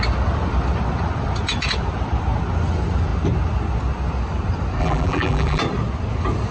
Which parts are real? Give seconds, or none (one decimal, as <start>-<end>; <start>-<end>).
0.0-4.8; 5.6-6.5